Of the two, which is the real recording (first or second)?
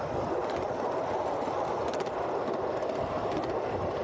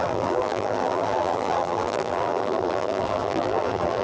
first